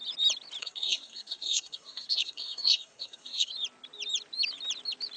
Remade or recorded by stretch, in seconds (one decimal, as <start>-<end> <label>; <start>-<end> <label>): 0.0-0.6 recorded; 0.6-3.5 remade; 3.5-5.2 recorded